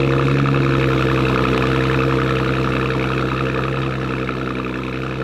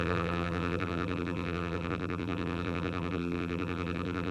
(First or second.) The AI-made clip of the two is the second